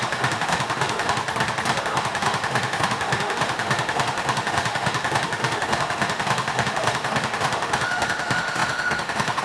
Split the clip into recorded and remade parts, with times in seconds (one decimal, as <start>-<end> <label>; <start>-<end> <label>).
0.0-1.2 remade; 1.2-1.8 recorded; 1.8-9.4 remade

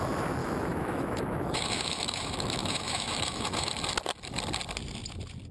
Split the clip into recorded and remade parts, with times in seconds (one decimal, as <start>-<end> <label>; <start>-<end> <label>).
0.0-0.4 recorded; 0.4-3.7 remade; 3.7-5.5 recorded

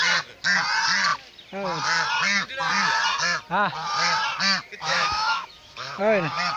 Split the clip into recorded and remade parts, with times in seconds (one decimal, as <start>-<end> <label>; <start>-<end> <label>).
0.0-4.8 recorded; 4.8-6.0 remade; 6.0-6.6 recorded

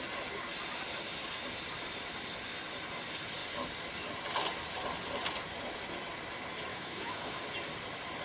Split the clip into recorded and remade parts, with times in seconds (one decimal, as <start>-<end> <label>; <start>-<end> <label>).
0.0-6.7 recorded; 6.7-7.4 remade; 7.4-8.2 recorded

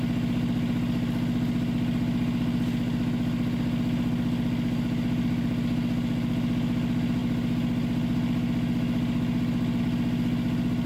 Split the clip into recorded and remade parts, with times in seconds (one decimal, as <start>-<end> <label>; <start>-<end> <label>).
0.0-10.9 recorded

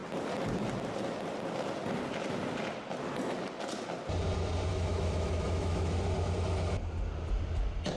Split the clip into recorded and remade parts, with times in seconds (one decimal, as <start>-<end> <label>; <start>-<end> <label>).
0.0-4.7 recorded; 4.7-5.9 remade; 5.9-8.0 recorded

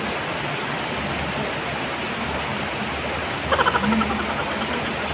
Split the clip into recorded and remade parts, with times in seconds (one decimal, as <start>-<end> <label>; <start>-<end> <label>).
0.0-5.1 recorded

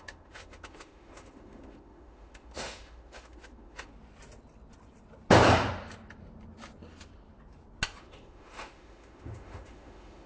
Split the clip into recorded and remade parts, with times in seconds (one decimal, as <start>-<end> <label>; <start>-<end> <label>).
0.0-3.9 remade; 3.9-8.0 recorded; 8.0-10.3 remade